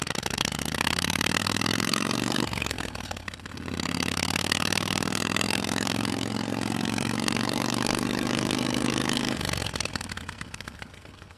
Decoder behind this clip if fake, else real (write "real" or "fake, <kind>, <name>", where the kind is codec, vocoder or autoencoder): fake, codec, SNAC